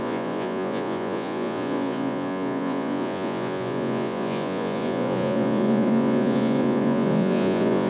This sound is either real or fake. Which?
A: fake